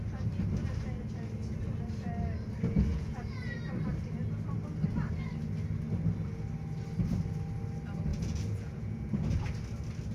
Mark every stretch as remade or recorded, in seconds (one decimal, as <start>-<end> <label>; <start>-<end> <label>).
0.0-2.9 recorded; 2.9-3.6 remade; 3.6-8.1 recorded; 8.1-9.2 remade; 9.2-10.1 recorded